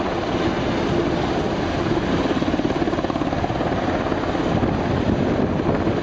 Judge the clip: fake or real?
real